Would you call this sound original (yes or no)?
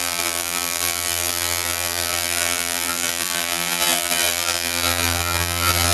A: no